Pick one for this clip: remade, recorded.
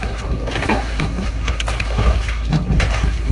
remade